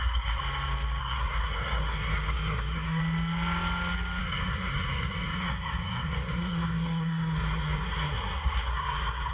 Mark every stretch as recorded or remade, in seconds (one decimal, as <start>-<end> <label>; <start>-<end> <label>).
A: 0.0-0.4 remade; 0.4-1.0 recorded; 1.0-3.0 remade; 3.0-4.2 recorded; 4.2-9.3 remade